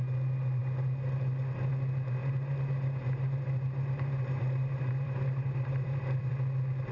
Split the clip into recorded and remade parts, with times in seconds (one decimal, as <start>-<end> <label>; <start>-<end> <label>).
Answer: 0.0-2.2 recorded; 2.2-6.3 remade; 6.3-6.9 recorded